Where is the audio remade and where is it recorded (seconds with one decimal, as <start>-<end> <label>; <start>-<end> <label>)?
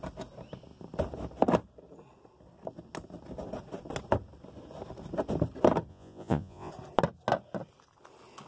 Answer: 0.0-5.9 recorded; 5.9-6.7 remade; 6.7-8.5 recorded